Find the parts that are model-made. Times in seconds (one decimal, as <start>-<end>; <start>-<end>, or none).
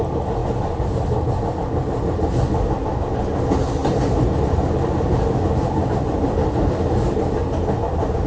none